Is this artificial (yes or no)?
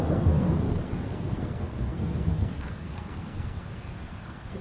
yes